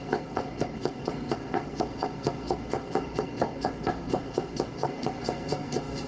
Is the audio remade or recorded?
remade